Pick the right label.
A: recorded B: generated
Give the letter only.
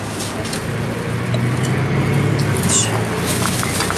A